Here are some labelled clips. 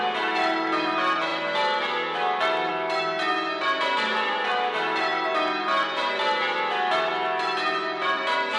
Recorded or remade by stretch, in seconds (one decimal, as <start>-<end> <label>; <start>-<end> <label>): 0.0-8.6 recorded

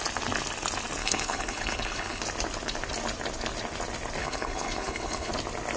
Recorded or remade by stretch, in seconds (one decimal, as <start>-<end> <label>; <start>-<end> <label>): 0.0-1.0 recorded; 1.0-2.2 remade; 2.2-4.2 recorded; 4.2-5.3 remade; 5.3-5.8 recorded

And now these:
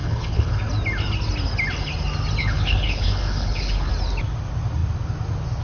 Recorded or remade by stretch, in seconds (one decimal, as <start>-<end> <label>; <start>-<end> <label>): 0.0-0.6 remade; 0.6-2.4 recorded; 2.4-3.9 remade; 3.9-5.6 recorded